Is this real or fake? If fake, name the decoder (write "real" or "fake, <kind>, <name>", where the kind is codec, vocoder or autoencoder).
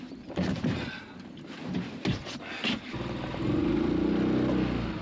real